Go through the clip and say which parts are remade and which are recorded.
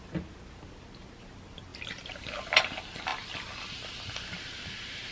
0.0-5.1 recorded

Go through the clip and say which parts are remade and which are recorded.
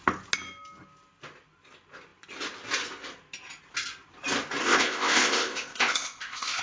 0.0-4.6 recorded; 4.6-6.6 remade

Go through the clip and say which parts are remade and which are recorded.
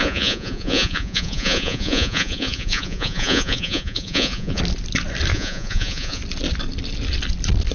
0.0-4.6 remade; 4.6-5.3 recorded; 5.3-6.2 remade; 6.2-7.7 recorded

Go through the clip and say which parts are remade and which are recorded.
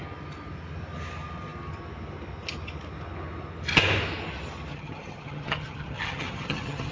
0.0-4.7 recorded; 4.7-6.9 remade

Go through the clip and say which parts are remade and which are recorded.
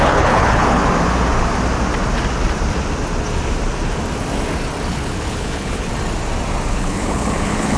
0.0-0.8 remade; 0.8-4.9 recorded; 4.9-5.9 remade; 5.9-6.7 recorded; 6.7-7.8 remade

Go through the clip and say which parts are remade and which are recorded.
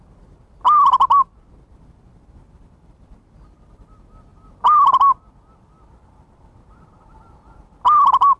0.0-8.4 recorded